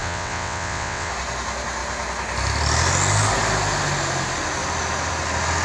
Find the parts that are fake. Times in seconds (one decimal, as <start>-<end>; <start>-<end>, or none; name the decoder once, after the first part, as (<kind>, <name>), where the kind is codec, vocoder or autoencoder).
0.0-1.1 (vocoder, WaveNeXt)

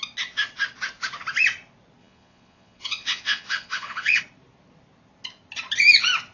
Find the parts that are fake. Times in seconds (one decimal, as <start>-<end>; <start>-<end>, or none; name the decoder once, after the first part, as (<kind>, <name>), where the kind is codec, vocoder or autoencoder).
2.0-4.2 (vocoder, Vocos)